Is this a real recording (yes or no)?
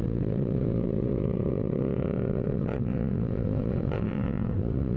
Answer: no